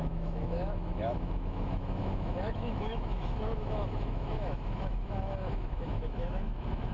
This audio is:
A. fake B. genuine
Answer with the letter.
A